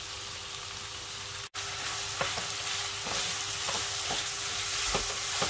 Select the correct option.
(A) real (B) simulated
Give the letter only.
A